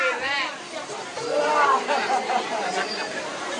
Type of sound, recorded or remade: remade